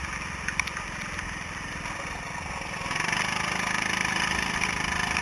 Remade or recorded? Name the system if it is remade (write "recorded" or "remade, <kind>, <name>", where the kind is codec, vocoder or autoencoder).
recorded